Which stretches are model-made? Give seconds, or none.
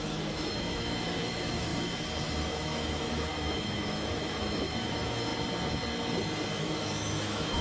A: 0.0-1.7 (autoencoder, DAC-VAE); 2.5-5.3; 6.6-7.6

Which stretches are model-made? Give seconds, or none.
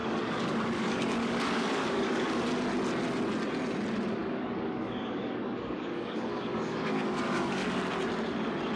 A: 0.0-2.4 (codec, DAC); 4.2-7.8